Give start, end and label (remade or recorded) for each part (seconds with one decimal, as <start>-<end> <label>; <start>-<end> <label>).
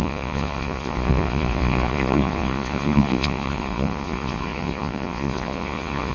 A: 0.0-6.1 remade